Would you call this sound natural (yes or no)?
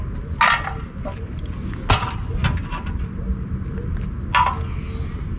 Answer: yes